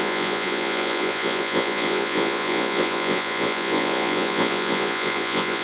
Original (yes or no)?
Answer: no